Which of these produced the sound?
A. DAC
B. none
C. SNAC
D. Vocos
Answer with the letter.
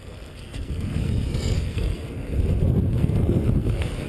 C